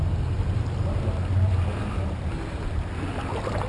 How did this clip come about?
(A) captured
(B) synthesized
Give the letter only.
A